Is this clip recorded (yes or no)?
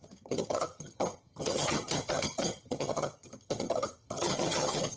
no